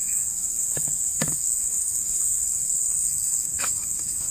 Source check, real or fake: fake